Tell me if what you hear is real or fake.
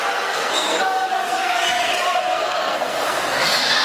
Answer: fake